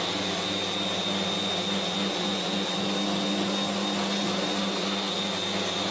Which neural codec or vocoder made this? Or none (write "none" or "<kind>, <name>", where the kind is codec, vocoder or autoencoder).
none